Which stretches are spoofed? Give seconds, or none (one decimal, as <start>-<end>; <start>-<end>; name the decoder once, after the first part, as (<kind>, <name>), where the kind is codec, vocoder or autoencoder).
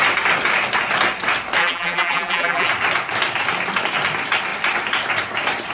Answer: 1.6-2.7 (vocoder, BigVGAN v2)